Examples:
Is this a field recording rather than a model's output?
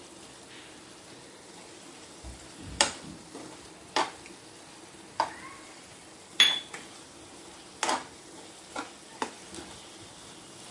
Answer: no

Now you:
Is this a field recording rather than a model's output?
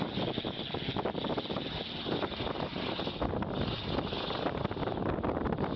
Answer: yes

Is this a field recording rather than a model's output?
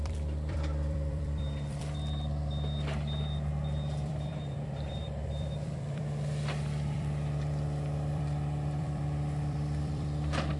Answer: no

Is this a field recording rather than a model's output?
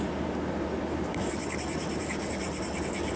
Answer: no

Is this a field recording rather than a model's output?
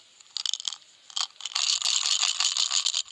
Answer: yes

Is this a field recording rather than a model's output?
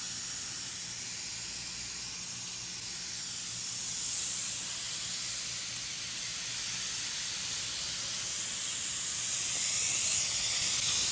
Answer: yes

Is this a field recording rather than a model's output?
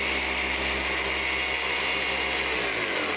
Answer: yes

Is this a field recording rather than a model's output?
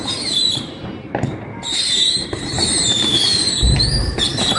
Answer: no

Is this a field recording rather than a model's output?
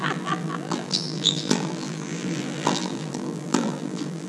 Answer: no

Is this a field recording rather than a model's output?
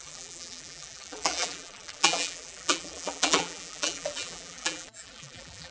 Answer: no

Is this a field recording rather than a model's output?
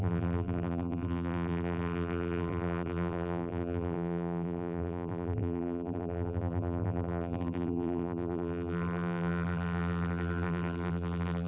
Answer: no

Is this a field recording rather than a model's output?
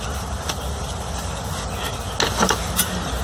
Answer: yes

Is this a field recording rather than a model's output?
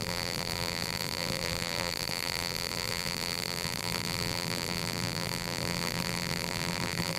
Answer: no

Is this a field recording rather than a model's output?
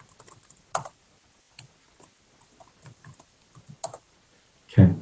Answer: no